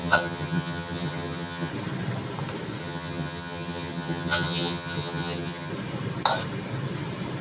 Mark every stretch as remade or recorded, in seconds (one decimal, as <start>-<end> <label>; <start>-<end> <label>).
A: 0.0-1.7 remade; 1.7-2.8 recorded; 2.8-5.7 remade; 5.7-7.4 recorded